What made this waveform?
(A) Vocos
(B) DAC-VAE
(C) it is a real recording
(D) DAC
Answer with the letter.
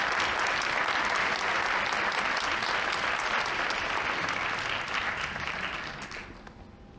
C